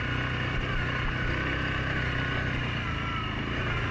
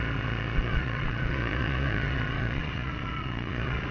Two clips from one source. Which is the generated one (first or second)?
second